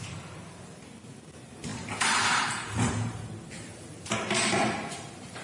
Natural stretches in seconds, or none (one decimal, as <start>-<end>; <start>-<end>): none